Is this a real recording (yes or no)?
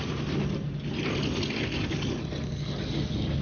yes